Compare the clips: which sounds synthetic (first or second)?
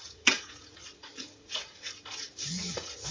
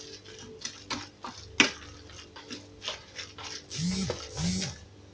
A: first